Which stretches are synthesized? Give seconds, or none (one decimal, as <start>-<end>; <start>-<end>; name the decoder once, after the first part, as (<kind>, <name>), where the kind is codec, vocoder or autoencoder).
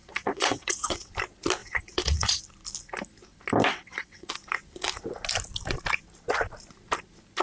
0.0-1.1 (vocoder, WaveNeXt); 1.6-2.4; 3.7-4.3